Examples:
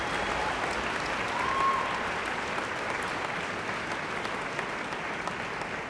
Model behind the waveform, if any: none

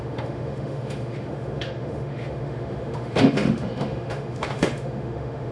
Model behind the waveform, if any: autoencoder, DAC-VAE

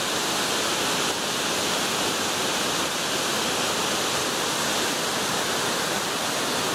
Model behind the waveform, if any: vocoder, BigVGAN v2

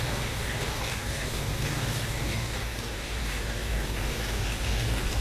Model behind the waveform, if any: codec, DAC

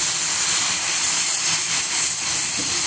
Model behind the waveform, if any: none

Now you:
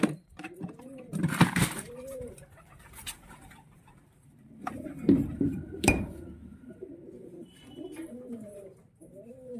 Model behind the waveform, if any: vocoder, BigVGAN v2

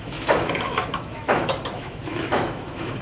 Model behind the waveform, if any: autoencoder, DAC-VAE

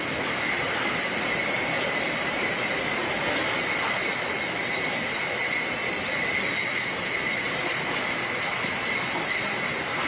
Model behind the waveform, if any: none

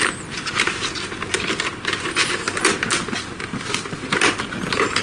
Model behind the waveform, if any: none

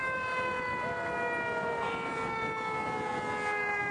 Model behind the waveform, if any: none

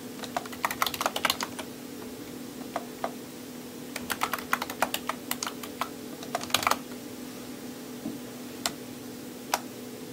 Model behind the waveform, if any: none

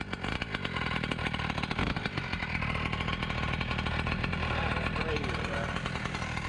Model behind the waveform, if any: none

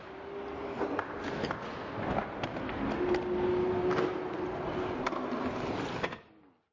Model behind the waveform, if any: none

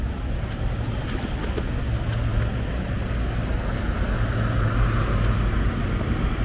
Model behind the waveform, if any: none